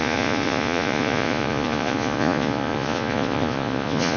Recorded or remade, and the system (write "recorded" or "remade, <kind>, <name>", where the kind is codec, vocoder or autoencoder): remade, vocoder, Vocos